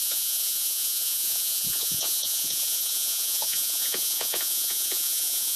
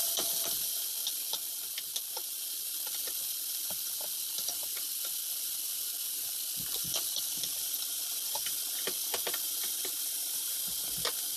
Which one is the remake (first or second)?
first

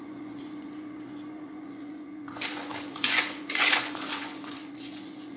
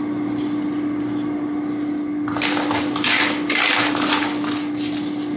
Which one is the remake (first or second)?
first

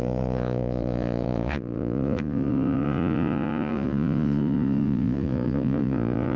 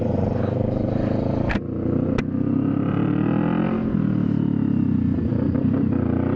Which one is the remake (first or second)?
first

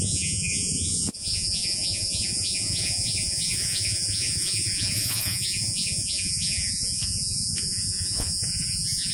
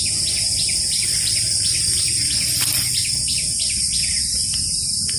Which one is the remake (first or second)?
first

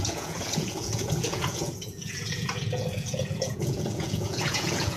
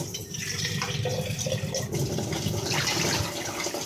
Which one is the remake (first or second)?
first